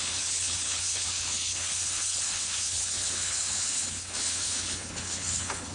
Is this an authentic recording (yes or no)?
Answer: no